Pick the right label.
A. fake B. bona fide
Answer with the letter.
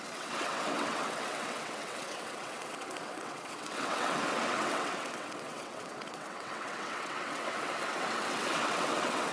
A